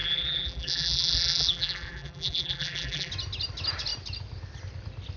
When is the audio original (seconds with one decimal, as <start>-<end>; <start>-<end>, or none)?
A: 3.1-5.2